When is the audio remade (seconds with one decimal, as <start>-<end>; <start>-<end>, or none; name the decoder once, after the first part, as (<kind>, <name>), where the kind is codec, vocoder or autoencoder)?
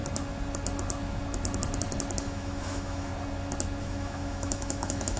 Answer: 2.2-3.1 (autoencoder, DAC-VAE); 3.8-5.2